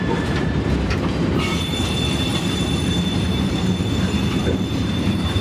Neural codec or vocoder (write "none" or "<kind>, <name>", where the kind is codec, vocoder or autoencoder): vocoder, BigVGAN v2